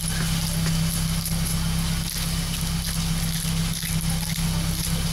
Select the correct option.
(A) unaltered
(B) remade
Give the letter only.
A